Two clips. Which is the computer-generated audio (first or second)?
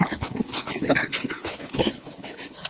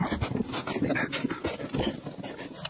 first